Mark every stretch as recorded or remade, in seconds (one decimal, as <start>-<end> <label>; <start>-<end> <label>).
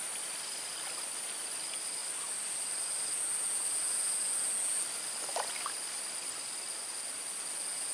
0.0-7.9 recorded